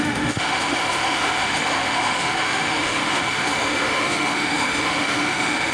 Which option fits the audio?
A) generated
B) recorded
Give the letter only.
A